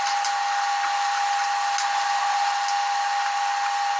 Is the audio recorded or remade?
recorded